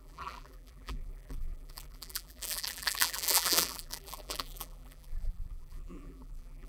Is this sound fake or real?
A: fake